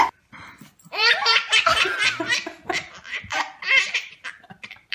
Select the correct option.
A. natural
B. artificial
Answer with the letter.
B